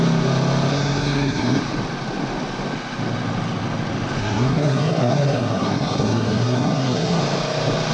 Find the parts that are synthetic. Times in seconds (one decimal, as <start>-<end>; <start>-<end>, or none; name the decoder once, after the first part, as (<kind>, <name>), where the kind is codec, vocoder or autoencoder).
0.7-1.6 (codec, SNAC); 4.2-7.2